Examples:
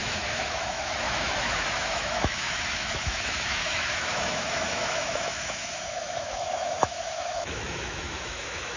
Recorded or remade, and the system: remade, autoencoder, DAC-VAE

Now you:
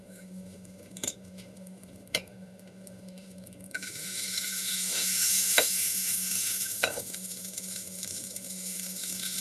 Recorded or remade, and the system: remade, autoencoder, DAC-VAE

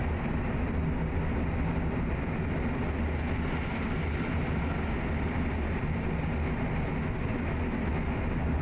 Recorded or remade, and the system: recorded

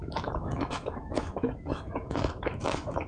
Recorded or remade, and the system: remade, autoencoder, DAC-VAE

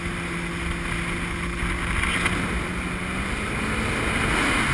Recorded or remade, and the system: recorded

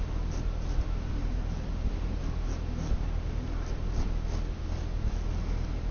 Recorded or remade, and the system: recorded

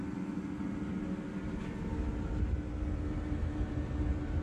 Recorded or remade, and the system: recorded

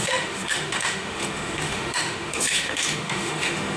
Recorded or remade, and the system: remade, autoencoder, DAC-VAE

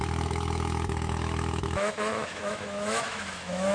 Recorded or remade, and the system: remade, autoencoder, DAC-VAE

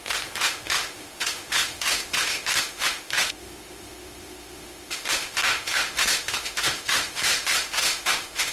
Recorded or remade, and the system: remade, autoencoder, DAC-VAE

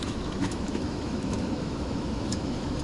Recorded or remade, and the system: remade, autoencoder, DAC-VAE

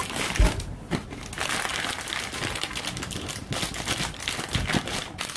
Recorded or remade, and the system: recorded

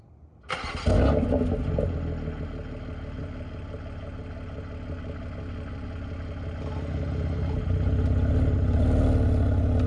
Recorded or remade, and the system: recorded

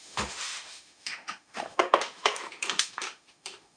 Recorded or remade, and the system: remade, autoencoder, DAC-VAE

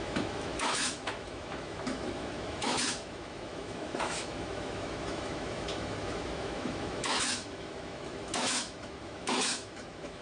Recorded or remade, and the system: remade, autoencoder, DAC-VAE